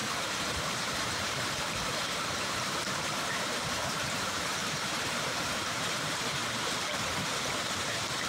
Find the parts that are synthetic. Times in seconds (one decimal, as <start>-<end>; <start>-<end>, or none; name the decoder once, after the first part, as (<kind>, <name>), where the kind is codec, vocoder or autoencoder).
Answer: 0.0-6.4 (vocoder, BigVGAN v2); 7.8-8.3

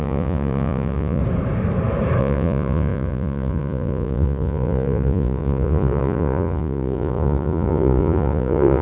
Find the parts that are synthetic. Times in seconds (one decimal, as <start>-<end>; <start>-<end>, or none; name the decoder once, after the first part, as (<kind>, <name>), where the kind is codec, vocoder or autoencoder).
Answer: 0.0-1.2 (vocoder, Vocos); 2.2-8.8

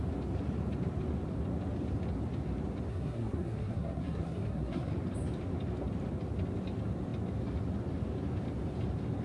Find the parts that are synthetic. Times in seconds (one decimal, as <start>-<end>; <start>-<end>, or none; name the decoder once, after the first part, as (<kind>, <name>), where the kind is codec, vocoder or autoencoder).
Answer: 2.9-4.9 (codec, SNAC)

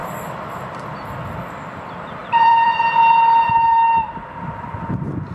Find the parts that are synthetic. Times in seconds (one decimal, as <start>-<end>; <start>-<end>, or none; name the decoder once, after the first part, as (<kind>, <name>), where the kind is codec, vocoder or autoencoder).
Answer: 2.2-2.8 (vocoder, BigVGAN v2)

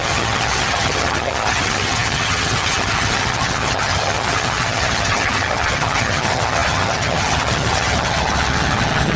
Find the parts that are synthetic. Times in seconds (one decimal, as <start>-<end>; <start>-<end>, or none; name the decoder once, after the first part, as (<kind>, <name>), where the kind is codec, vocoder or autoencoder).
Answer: 0.0-9.2 (vocoder, HiFi-GAN)

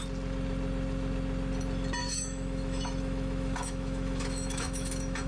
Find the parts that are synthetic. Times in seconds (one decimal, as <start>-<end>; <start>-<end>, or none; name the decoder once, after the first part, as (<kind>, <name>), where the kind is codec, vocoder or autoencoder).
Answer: 2.0-5.3 (autoencoder, DAC-VAE)

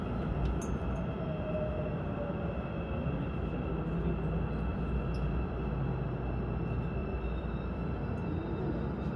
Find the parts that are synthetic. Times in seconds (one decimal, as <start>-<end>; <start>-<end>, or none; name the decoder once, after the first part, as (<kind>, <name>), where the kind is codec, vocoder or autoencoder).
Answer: 7.0-7.9 (vocoder, BigVGAN v2)